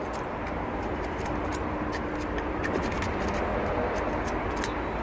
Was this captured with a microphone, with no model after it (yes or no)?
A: yes